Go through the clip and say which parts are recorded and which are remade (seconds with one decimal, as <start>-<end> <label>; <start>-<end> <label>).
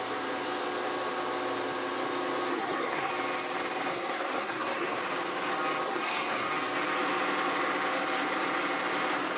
0.0-2.5 recorded; 2.5-3.1 remade; 3.1-3.9 recorded; 3.9-5.0 remade; 5.0-5.9 recorded; 5.9-6.5 remade; 6.5-9.4 recorded